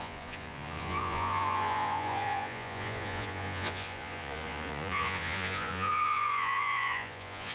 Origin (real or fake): fake